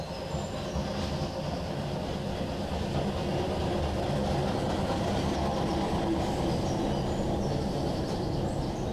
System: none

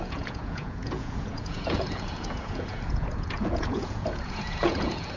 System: vocoder, Vocos